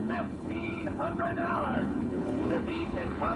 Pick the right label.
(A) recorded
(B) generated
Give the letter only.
B